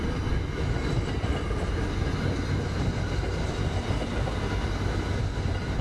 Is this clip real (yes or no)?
yes